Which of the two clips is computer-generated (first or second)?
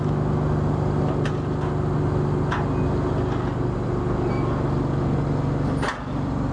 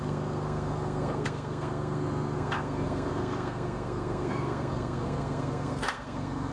second